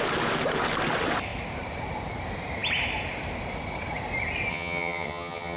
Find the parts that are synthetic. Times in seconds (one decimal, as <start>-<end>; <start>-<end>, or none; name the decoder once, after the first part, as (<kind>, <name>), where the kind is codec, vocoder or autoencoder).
4.5-5.6 (vocoder, HiFi-GAN)

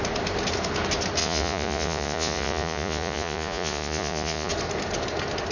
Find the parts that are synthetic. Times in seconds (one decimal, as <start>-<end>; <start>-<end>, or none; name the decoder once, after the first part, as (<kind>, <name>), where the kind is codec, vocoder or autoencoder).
1.2-4.5 (vocoder, Vocos)

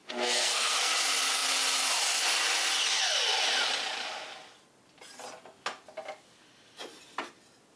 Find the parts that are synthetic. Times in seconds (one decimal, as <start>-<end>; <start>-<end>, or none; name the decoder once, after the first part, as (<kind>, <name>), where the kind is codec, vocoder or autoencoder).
0.0-0.9 (codec, SNAC)

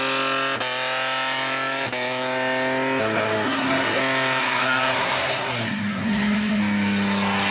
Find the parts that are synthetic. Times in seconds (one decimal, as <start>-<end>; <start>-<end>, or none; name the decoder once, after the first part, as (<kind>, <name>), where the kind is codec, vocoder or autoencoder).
3.0-4.0 (codec, SNAC); 4.4-6.6

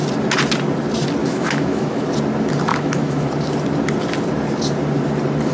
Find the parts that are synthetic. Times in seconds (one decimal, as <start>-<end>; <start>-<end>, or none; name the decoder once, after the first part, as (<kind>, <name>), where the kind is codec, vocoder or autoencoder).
1.2-2.1 (autoencoder, DAC-VAE); 2.7-3.3

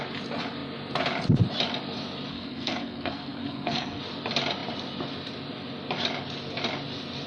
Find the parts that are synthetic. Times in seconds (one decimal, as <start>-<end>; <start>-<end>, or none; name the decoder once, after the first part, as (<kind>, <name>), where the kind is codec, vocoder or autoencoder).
2.3-4.0 (codec, SNAC)

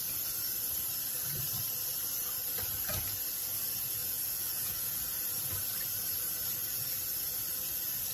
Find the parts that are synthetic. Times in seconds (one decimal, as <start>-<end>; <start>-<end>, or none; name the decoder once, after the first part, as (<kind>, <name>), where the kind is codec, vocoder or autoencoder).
4.0-5.0 (vocoder, Vocos)

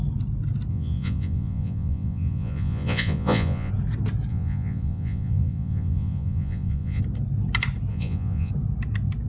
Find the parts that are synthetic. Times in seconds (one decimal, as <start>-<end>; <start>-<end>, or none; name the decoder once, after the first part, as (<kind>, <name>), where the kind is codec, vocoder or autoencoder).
0.7-3.7 (vocoder, Vocos); 4.3-7.0; 7.9-8.5